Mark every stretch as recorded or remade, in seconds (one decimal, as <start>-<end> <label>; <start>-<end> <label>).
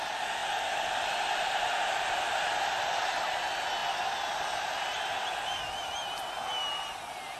0.0-0.4 recorded; 0.4-2.2 remade; 2.2-7.4 recorded